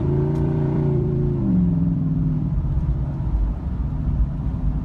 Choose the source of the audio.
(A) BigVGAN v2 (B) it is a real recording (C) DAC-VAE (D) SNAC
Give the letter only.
A